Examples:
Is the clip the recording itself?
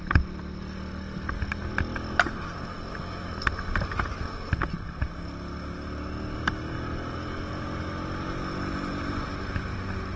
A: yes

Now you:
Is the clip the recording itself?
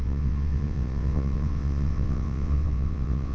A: no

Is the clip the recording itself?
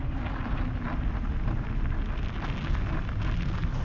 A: yes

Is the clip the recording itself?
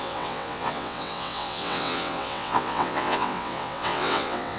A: no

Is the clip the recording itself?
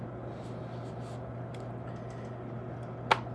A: yes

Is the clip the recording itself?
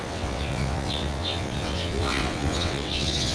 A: no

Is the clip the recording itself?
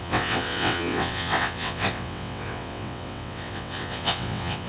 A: no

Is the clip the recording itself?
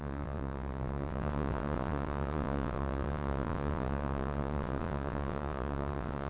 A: no